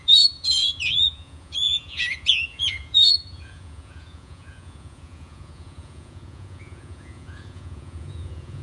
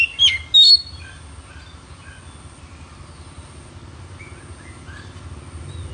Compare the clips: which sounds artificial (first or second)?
first